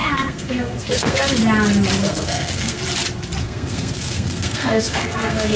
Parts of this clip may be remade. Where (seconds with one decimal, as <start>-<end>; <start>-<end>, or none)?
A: 0.0-1.3; 2.0-2.8; 3.4-5.6